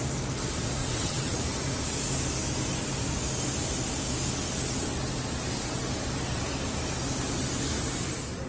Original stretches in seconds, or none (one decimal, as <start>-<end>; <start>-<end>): 0.0-0.8; 1.4-8.5